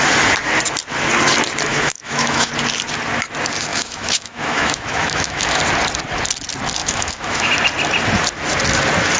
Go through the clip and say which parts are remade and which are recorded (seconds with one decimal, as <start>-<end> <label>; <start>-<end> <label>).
0.0-1.7 recorded; 1.7-2.5 remade; 2.5-3.7 recorded; 3.7-5.6 remade; 5.6-6.8 recorded; 6.8-7.5 remade; 7.5-9.2 recorded